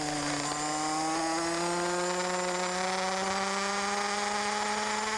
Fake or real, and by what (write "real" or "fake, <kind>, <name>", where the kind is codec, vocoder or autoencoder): real